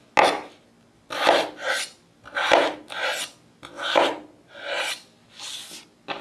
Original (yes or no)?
yes